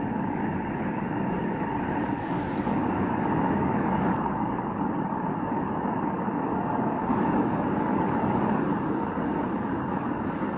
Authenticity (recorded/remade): remade